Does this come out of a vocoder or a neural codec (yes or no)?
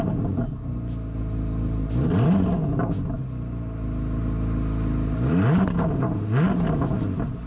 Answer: no